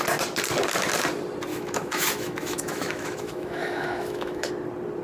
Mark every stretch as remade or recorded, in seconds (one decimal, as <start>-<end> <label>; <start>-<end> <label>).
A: 0.0-1.5 recorded; 1.5-4.5 remade; 4.5-5.0 recorded